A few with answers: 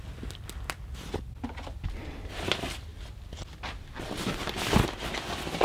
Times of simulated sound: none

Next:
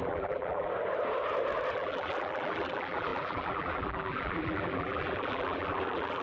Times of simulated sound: 0.0-0.7 (vocoder, BigVGAN v2); 1.7-6.2

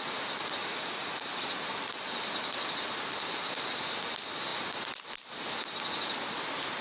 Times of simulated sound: 0.6-1.3 (vocoder, Vocos)

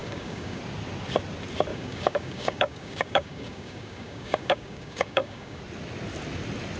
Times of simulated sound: 0.0-0.6 (codec, DAC); 1.7-5.6

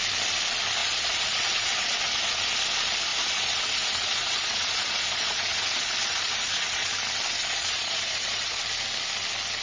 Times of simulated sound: 0.8-2.4 (vocoder, Vocos); 3.1-6.9; 7.4-8.6

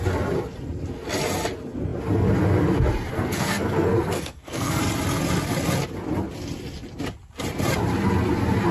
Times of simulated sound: 3.1-4.8 (codec, SNAC)

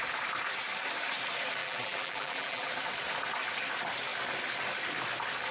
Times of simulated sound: 1.6-2.7 (vocoder, BigVGAN v2)